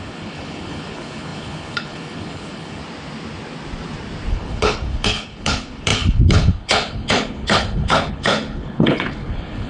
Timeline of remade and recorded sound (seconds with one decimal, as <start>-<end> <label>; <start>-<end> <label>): 0.0-2.8 remade; 2.8-4.3 recorded; 4.3-9.7 remade

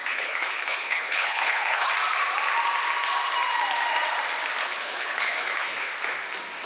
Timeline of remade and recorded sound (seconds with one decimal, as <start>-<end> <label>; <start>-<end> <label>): 0.0-1.9 remade; 1.9-4.6 recorded; 4.6-5.9 remade; 5.9-6.7 recorded

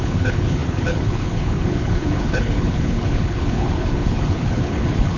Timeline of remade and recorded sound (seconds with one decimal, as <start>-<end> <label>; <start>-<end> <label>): 0.0-5.2 remade

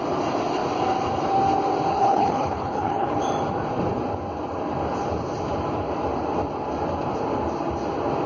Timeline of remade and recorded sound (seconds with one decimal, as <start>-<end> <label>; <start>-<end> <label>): 0.0-1.9 recorded; 1.9-3.2 remade; 3.2-8.3 recorded